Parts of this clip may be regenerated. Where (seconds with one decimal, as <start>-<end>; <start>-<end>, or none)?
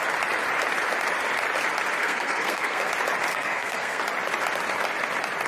2.0-2.9; 3.3-4.0